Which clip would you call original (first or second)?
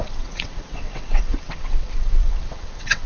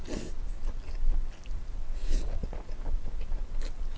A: second